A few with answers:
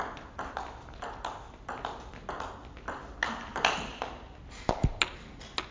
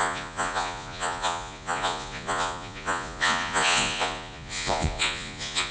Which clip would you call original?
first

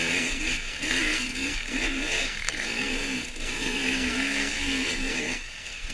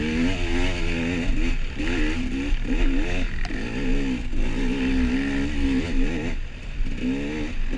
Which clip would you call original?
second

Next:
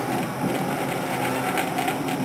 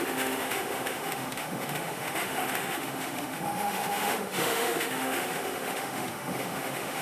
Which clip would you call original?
first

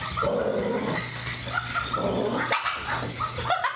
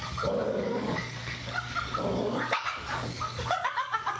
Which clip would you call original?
first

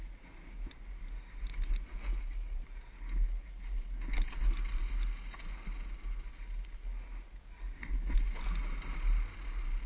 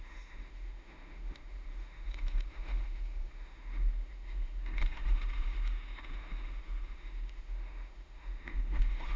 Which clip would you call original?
first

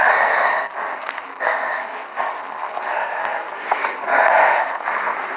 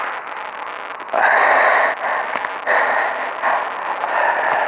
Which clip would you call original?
second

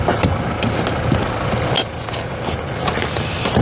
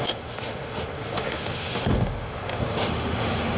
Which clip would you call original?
first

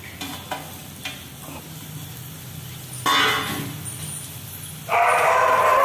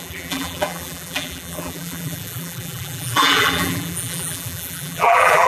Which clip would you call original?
first